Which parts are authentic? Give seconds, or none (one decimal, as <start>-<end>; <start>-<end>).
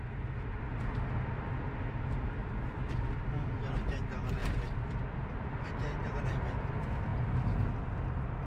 0.0-2.4; 3.3-4.4; 6.3-8.5